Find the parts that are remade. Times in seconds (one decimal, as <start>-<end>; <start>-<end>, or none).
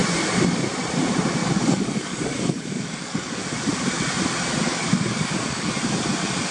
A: 1.4-3.4; 4.7-5.7